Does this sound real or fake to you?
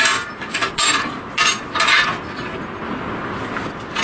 real